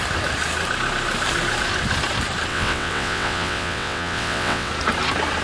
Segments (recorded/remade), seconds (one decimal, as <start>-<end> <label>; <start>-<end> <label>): 0.0-2.5 recorded; 2.5-4.7 remade; 4.7-5.4 recorded